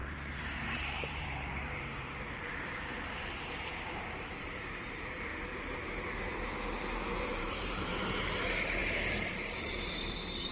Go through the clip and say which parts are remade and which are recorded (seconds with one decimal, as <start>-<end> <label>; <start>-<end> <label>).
0.0-5.3 remade; 5.3-7.2 recorded; 7.2-10.5 remade